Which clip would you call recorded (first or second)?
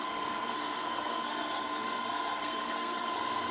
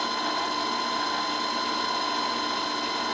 second